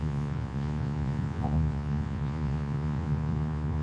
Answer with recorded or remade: remade